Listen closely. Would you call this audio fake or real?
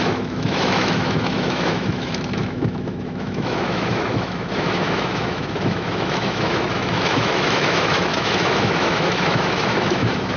fake